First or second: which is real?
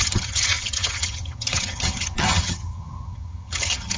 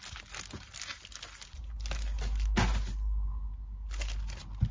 second